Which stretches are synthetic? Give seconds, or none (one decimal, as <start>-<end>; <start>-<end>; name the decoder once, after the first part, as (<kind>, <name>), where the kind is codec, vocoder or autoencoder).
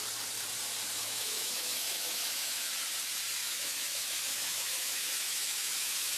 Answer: 1.0-2.7 (autoencoder, DAC-VAE); 3.4-6.2